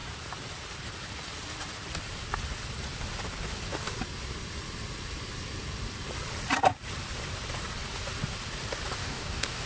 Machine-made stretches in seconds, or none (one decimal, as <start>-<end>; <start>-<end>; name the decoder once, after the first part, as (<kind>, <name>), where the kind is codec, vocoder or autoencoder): 9.0-9.7 (codec, DAC)